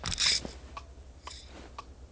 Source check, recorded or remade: recorded